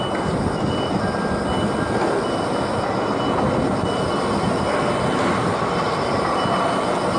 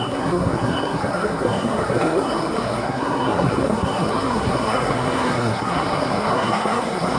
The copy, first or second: second